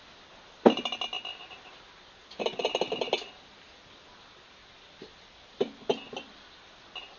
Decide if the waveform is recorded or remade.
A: recorded